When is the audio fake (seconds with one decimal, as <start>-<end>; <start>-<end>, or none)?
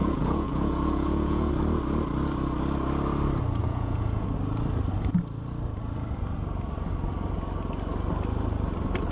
0.0-1.5; 3.6-4.3